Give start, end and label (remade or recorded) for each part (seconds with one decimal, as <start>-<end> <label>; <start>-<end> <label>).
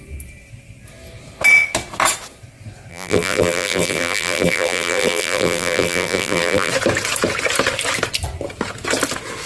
0.0-2.9 recorded; 2.9-6.7 remade; 6.7-9.5 recorded